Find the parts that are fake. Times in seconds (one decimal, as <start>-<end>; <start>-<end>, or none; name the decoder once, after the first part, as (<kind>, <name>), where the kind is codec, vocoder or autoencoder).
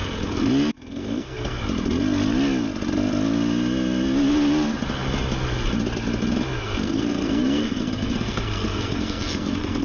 0.7-1.6 (codec, SNAC); 6.6-9.8